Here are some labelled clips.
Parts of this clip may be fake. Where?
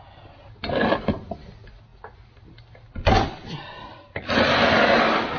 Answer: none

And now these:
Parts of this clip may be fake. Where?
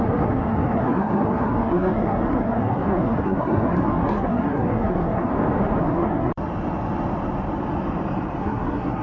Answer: 0.0-5.3 (codec, SNAC); 5.8-6.3; 8.4-9.0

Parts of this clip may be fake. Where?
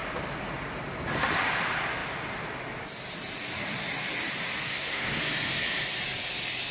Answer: 4.7-5.2 (codec, SNAC)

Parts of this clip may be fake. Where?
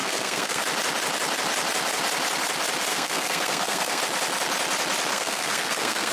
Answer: 0.0-0.6 (codec, SNAC); 2.9-4.0; 5.1-6.1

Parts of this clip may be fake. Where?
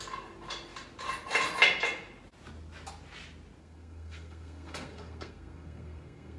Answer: 3.6-6.4 (codec, SNAC)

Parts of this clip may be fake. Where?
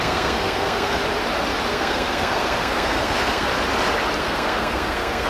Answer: 0.0-1.0 (codec, SNAC); 1.7-3.5; 4.2-5.3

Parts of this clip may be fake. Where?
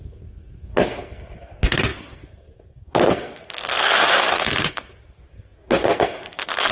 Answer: 0.0-6.7 (codec, SNAC)